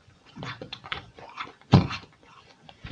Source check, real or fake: fake